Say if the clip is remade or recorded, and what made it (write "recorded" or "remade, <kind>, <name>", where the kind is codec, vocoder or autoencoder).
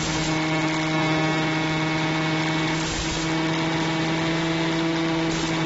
recorded